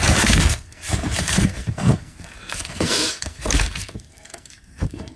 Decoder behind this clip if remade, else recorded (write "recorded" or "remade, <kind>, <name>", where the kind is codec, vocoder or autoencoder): remade, codec, SNAC